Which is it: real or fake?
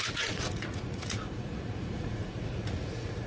fake